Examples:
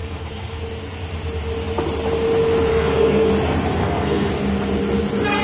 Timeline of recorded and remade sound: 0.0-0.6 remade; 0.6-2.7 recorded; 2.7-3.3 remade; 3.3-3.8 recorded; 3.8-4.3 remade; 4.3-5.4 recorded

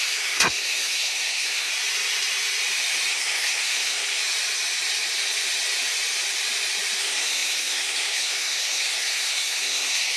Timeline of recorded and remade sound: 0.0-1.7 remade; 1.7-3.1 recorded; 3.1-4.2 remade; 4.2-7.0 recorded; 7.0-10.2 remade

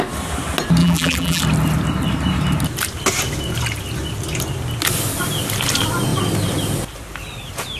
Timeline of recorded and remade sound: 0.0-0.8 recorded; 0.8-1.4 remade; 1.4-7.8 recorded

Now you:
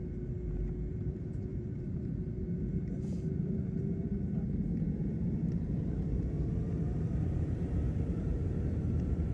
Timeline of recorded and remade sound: 0.0-0.9 recorded; 0.9-9.3 remade

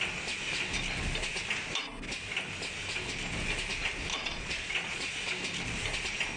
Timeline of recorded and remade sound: 0.0-4.1 recorded; 4.1-5.3 remade; 5.3-6.4 recorded

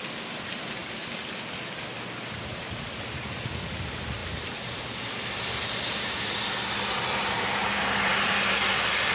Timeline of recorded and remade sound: 0.0-9.1 recorded